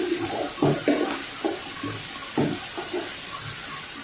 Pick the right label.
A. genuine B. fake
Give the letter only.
A